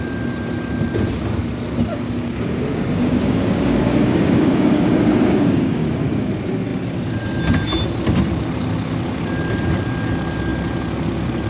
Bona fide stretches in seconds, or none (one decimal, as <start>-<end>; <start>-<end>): 0.0-1.9; 6.3-11.5